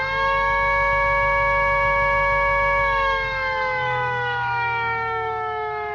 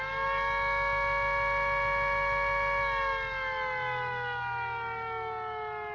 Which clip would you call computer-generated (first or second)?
first